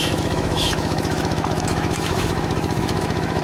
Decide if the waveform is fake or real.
fake